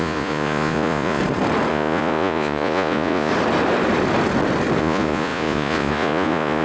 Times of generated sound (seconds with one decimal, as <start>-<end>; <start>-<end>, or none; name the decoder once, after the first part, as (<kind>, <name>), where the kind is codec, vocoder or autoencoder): 0.0-1.2 (vocoder, Vocos); 1.7-3.3; 4.8-6.6